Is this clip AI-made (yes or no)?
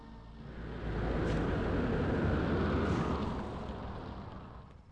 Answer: no